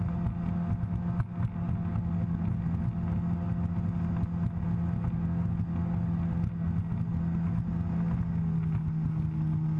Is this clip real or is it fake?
real